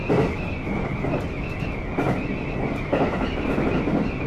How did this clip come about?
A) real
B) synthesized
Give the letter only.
A